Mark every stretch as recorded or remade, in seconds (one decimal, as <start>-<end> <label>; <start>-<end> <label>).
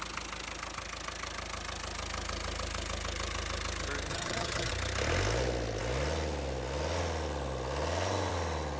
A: 0.0-4.1 recorded; 4.1-4.7 remade; 4.7-8.8 recorded